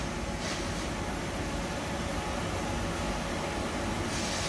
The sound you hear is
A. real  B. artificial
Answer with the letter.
A